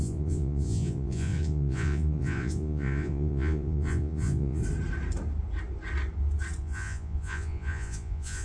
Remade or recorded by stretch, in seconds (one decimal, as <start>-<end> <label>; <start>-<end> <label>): 0.0-4.6 remade; 4.6-6.6 recorded; 6.6-8.4 remade